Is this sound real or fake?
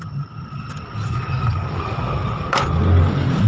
real